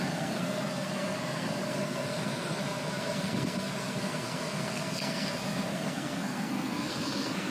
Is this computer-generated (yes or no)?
yes